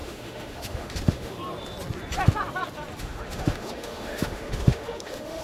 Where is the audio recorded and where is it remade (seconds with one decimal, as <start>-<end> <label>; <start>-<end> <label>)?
0.0-1.4 remade; 1.4-3.0 recorded; 3.0-5.4 remade